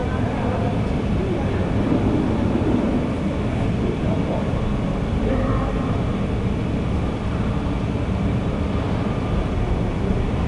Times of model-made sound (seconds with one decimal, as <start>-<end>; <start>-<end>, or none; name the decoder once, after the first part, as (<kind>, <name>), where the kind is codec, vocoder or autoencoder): none